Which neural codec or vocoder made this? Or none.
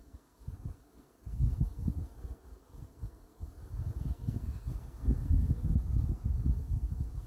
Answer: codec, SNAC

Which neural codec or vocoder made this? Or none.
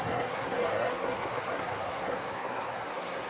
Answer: codec, SNAC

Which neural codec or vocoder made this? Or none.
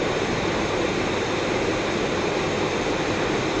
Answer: none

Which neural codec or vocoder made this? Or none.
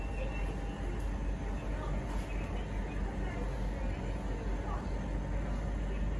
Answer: none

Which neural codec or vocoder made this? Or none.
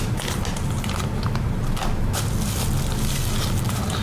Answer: none